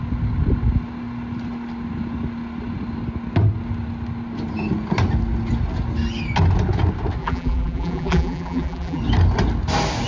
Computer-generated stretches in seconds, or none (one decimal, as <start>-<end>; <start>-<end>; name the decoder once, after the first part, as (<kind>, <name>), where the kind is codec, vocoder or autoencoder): 7.2-9.0 (vocoder, BigVGAN v2)

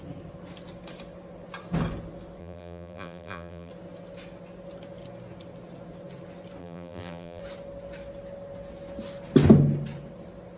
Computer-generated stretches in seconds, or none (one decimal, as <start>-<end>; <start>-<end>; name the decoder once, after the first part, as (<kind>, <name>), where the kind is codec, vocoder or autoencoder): 2.4-3.7 (vocoder, BigVGAN v2); 6.6-7.4

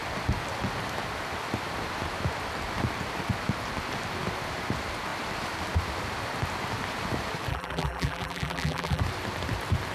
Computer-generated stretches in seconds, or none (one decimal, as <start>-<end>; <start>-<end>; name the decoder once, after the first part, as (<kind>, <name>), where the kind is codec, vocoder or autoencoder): 7.5-9.0 (vocoder, BigVGAN v2)